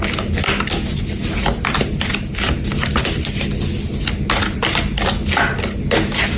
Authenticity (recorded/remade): recorded